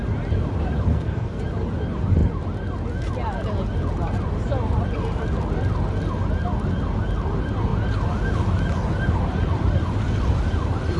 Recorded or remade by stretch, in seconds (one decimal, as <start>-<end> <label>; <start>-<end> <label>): 0.0-0.9 recorded; 0.9-1.4 remade; 1.4-11.0 recorded

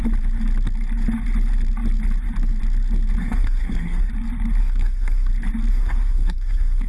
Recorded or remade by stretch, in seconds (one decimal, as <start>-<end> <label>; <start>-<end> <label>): 0.0-3.2 recorded; 3.2-4.1 remade; 4.1-4.6 recorded; 4.6-5.3 remade; 5.3-5.7 recorded; 5.7-6.9 remade

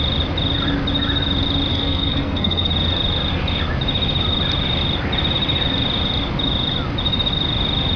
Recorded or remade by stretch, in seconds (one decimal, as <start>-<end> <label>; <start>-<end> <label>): 0.0-1.7 recorded; 1.7-2.7 remade; 2.7-8.0 recorded

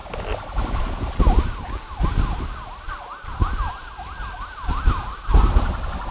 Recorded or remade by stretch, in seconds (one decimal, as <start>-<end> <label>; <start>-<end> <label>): 0.0-6.1 recorded

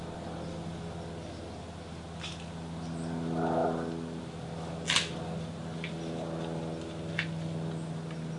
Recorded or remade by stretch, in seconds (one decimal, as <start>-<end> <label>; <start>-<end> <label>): 0.0-8.4 recorded

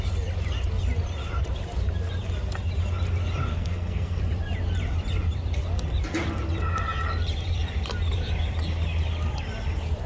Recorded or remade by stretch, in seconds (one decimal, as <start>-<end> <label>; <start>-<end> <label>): 0.0-3.5 recorded; 3.5-4.2 remade; 4.2-10.1 recorded